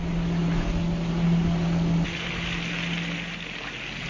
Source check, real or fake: real